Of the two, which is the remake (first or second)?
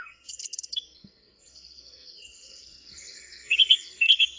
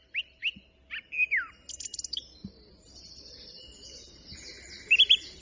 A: first